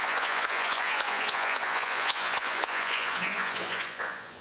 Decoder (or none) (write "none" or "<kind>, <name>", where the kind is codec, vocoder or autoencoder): vocoder, Vocos